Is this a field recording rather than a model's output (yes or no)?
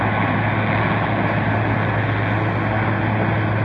yes